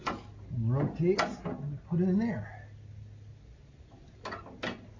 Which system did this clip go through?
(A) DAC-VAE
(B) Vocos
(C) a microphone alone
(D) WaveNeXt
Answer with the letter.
C